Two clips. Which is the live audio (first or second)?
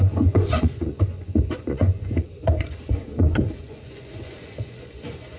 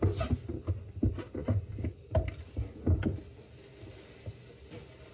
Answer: second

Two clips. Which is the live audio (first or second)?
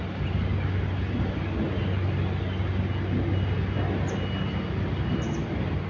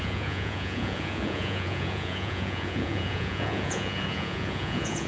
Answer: first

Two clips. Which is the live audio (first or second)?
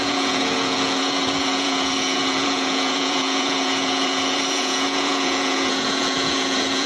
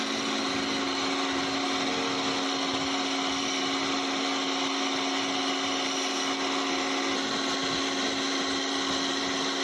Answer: second